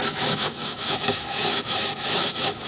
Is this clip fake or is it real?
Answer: fake